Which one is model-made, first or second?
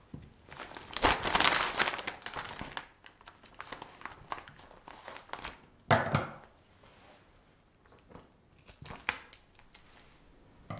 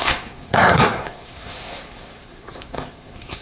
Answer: second